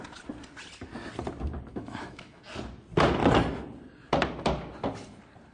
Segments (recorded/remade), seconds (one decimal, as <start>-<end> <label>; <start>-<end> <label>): 0.0-1.7 recorded; 1.7-2.4 remade; 2.4-5.5 recorded